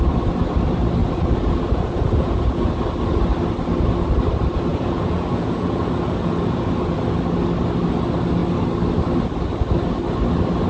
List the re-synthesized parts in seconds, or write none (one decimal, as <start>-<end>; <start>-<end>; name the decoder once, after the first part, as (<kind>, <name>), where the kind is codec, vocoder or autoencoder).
1.0-2.7 (vocoder, Vocos); 4.7-7.0